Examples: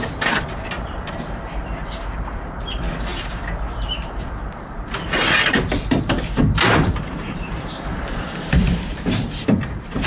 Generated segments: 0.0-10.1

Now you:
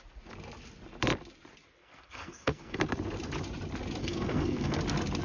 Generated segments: 1.8-2.8; 4.0-4.8

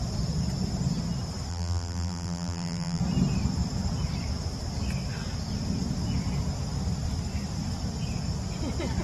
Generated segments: 1.5-3.0